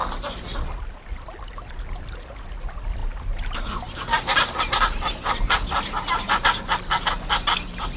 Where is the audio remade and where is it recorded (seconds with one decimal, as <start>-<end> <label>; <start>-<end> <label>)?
0.0-8.0 recorded